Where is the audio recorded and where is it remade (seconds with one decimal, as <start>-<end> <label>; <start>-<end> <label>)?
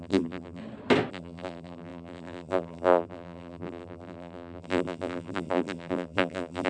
0.0-0.6 remade; 0.6-1.1 recorded; 1.1-6.7 remade